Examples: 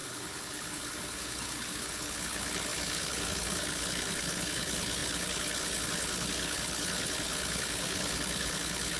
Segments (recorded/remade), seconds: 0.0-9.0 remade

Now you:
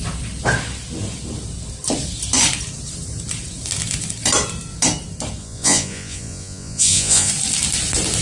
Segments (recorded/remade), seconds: 0.0-5.4 recorded; 5.4-7.3 remade; 7.3-8.2 recorded

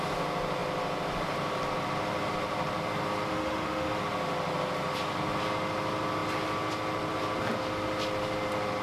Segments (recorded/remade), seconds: 0.0-3.3 recorded; 3.3-3.9 remade; 3.9-8.8 recorded

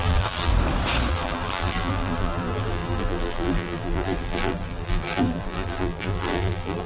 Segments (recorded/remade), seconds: 0.0-0.5 remade; 0.5-1.1 recorded; 1.1-6.9 remade

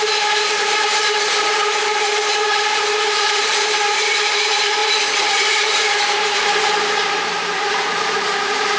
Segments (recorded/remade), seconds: 0.0-4.8 remade; 4.8-5.3 recorded; 5.3-8.8 remade

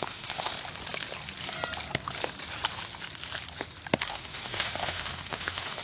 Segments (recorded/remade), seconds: 0.0-0.5 remade; 0.5-4.0 recorded; 4.0-5.8 remade

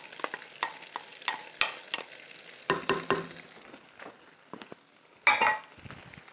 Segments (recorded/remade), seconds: 0.0-6.3 recorded

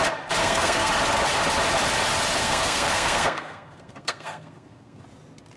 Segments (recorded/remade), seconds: 0.0-0.4 recorded; 0.4-0.9 remade; 0.9-2.4 recorded; 2.4-5.0 remade; 5.0-5.6 recorded